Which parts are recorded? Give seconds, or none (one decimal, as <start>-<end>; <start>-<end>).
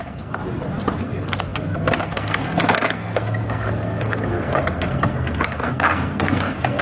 0.4-1.0